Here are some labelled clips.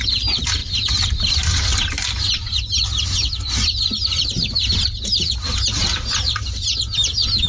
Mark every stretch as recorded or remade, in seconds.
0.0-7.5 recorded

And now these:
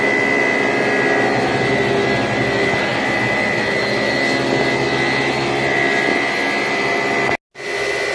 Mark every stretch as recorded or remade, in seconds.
0.0-8.1 recorded

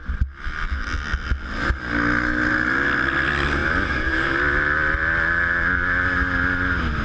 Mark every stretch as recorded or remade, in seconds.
0.0-7.0 recorded

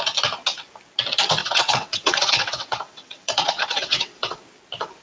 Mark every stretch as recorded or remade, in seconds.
0.0-1.4 recorded; 1.4-4.4 remade; 4.4-5.0 recorded

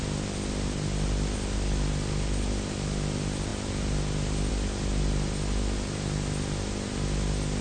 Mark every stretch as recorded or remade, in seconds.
0.0-7.6 recorded

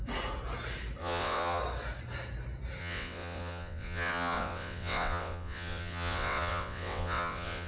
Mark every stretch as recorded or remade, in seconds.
0.0-1.0 recorded; 1.0-1.6 remade; 1.6-2.8 recorded; 2.8-7.7 remade

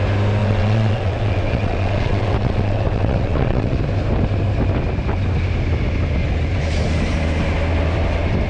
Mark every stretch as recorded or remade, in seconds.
0.0-0.4 recorded; 0.4-3.8 remade; 3.8-8.5 recorded